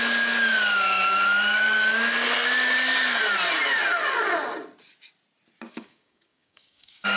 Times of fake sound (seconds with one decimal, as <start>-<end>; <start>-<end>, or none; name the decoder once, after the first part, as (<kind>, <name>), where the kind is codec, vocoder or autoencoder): 0.0-3.2 (codec, DAC); 5.7-7.2

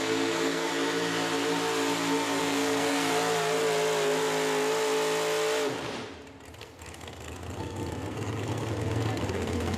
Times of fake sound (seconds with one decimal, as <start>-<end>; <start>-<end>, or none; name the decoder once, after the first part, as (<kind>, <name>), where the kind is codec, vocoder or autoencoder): 0.0-0.7 (codec, SNAC); 2.4-3.1; 6.6-9.8

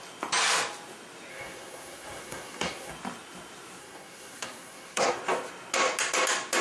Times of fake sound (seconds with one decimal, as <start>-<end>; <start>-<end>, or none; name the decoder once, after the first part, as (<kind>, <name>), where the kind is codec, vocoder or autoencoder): 1.3-2.9 (codec, SNAC); 3.8-5.2